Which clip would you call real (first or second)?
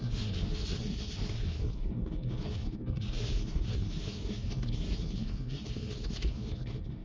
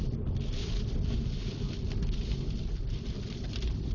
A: second